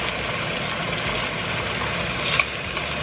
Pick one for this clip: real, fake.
real